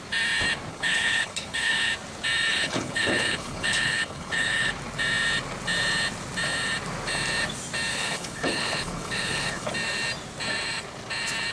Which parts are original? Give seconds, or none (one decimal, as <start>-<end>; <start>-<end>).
0.0-0.7; 1.9-2.5; 4.7-7.9; 9.7-11.5